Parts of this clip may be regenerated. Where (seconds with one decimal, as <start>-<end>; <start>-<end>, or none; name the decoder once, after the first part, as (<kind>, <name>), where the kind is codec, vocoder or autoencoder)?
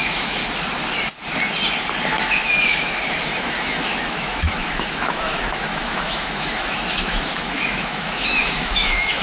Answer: 0.0-0.4 (autoencoder, DAC-VAE); 2.1-9.2